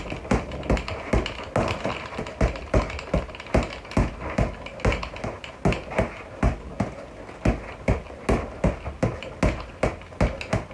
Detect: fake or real real